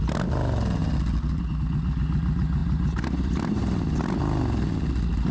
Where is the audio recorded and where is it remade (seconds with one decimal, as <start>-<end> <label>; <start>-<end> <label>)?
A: 0.0-2.6 recorded; 2.6-3.6 remade; 3.6-5.3 recorded